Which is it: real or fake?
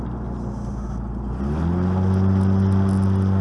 real